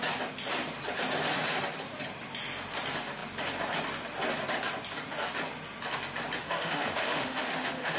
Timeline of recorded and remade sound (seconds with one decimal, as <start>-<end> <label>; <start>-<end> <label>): 0.0-6.4 recorded; 6.4-8.0 remade